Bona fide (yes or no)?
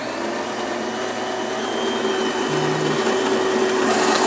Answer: yes